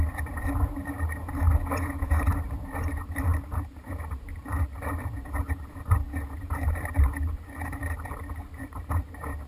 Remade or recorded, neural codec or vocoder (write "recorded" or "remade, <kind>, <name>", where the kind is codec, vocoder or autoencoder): remade, vocoder, BigVGAN v2